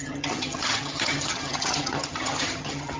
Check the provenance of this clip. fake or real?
fake